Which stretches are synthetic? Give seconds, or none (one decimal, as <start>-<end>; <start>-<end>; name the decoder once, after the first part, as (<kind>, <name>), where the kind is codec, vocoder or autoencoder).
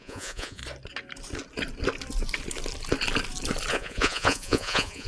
0.0-0.6 (vocoder, Vocos); 3.7-5.1